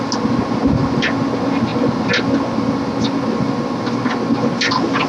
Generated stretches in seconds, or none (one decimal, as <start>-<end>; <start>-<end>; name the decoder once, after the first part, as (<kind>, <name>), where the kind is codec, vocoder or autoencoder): none